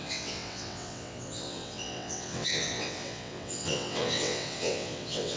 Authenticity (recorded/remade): remade